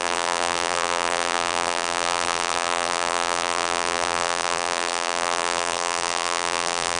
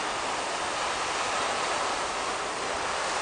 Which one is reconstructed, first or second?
first